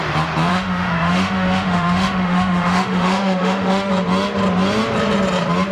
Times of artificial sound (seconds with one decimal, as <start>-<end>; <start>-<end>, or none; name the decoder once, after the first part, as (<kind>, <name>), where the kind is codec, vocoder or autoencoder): 0.5-3.9 (autoencoder, DAC-VAE)

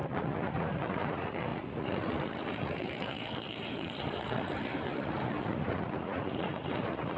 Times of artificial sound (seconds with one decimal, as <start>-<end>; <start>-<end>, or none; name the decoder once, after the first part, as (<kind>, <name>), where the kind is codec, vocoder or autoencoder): 0.0-7.2 (vocoder, Vocos)

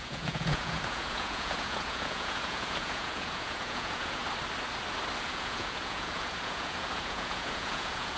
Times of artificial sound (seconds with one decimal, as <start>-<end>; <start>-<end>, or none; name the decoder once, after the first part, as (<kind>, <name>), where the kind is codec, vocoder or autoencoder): 0.0-4.2 (vocoder, Vocos); 5.2-8.2

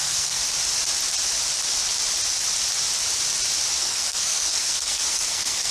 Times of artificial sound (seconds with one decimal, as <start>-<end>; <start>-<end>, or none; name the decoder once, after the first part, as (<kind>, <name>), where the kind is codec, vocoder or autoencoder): 0.0-0.4 (codec, SNAC); 3.8-5.7

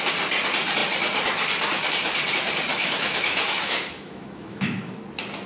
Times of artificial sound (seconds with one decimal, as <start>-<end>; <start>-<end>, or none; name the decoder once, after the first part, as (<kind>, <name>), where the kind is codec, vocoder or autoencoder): 2.7-5.0 (autoencoder, DAC-VAE)

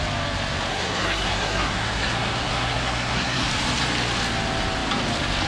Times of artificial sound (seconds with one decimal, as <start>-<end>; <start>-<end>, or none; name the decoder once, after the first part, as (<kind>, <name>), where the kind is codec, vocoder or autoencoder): 0.7-3.5 (codec, SNAC)

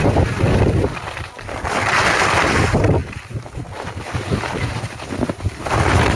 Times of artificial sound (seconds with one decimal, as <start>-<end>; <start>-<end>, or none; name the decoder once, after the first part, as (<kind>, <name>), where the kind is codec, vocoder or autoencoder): 3.0-4.3 (vocoder, BigVGAN v2)

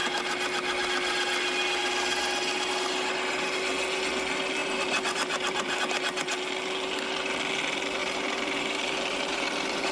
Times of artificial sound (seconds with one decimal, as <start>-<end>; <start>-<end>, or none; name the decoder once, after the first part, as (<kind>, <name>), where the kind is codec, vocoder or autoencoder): 4.6-5.8 (vocoder, BigVGAN v2); 8.0-9.9